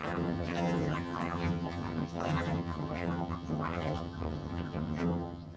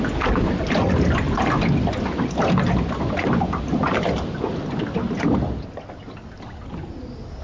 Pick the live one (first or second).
second